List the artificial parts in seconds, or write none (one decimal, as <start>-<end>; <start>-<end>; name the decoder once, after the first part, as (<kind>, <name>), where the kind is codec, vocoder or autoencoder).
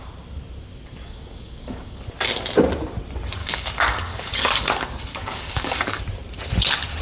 1.0-2.0 (codec, DAC); 3.4-6.0